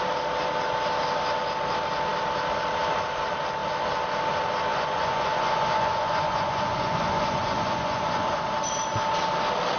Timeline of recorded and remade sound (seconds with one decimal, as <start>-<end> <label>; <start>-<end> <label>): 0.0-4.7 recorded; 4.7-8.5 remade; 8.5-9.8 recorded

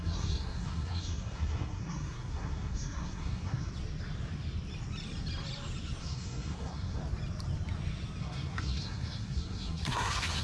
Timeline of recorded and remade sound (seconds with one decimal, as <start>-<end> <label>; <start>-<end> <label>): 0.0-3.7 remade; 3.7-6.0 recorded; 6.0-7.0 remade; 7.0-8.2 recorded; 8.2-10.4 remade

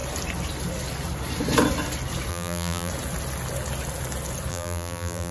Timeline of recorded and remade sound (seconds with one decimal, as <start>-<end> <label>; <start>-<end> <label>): 0.0-2.3 recorded; 2.3-2.9 remade; 2.9-4.5 recorded; 4.5-5.3 remade

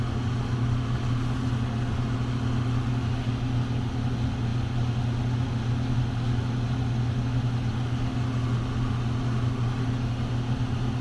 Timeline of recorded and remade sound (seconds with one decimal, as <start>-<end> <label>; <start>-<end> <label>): 0.0-11.0 recorded

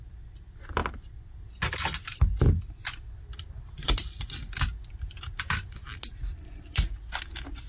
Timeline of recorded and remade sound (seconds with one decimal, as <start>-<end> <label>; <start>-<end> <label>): 0.0-7.7 recorded